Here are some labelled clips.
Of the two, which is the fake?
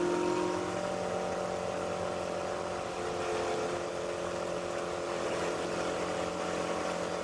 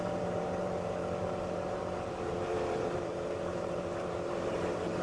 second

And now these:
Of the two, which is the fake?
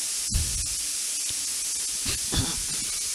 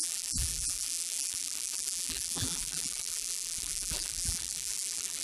second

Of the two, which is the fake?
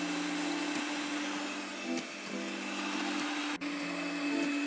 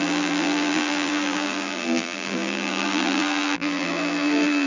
second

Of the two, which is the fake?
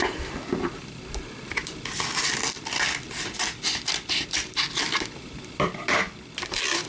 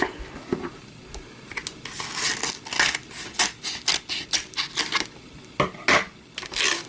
first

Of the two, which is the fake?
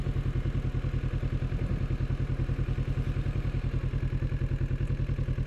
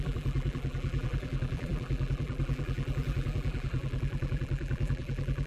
second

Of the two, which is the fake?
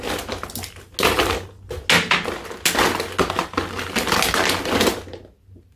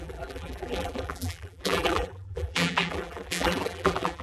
second